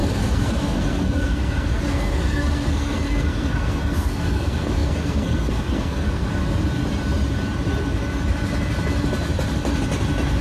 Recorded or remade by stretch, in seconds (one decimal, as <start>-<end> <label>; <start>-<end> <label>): 0.0-6.4 remade; 6.4-10.4 recorded